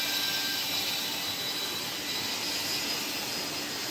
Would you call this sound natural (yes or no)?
yes